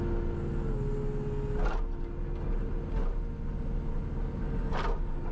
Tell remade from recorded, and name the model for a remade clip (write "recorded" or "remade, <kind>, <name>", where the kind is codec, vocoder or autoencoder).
recorded